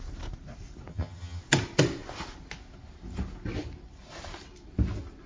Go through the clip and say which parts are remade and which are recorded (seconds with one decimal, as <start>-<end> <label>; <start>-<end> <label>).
0.0-0.9 recorded; 0.9-1.4 remade; 1.4-5.3 recorded